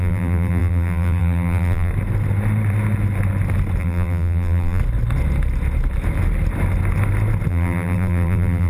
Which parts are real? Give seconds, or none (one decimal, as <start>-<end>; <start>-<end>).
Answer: 1.9-3.8; 4.8-7.5